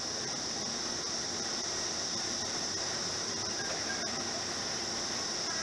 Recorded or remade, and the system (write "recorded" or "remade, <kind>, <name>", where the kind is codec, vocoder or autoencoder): recorded